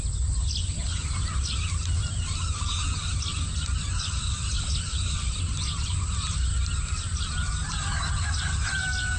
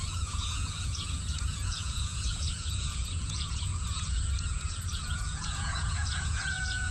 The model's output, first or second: second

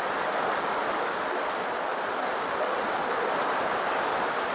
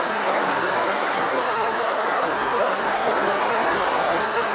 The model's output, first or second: second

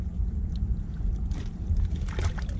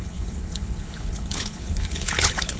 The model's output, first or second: second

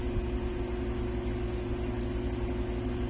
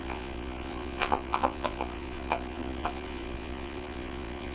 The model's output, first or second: second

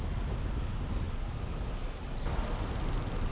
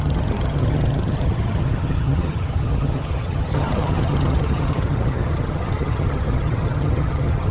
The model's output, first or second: second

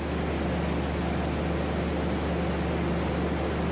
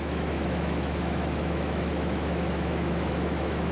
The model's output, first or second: second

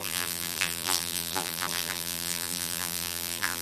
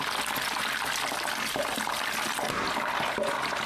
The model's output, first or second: first